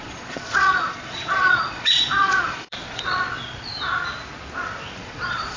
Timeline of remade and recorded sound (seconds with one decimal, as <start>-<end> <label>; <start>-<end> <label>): 0.0-3.7 remade; 3.7-4.6 recorded; 4.6-5.6 remade